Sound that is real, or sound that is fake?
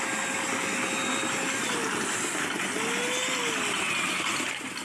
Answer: real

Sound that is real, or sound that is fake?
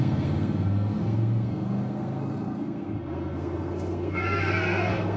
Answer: fake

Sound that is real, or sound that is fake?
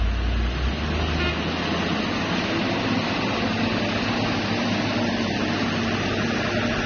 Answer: real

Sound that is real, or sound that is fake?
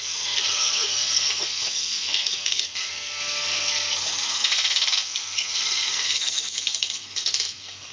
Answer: fake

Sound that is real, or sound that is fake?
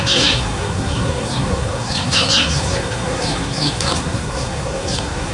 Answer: fake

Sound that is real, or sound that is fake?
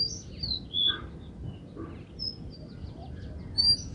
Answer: real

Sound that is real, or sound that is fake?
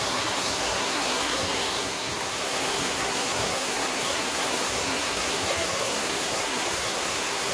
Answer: fake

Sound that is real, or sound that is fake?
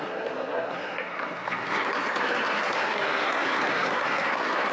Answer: fake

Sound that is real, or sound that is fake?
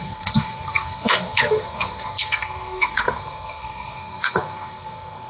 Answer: fake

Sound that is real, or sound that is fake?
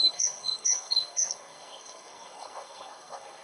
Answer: fake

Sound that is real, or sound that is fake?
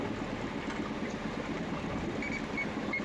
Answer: real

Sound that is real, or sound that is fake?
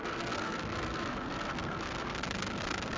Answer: fake